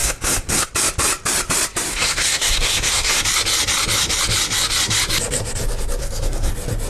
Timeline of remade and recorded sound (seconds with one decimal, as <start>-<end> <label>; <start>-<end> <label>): 0.0-0.7 remade; 0.7-1.9 recorded; 1.9-3.2 remade; 3.2-6.0 recorded; 6.0-6.5 remade; 6.5-6.9 recorded